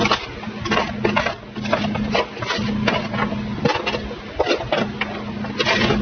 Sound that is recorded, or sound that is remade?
recorded